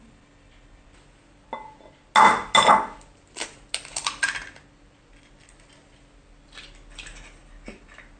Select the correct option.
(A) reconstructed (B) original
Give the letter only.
B